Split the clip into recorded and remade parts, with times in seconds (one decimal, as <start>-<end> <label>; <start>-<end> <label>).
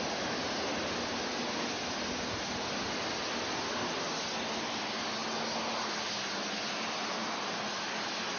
0.0-8.4 recorded